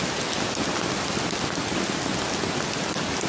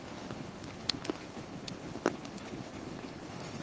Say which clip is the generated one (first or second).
second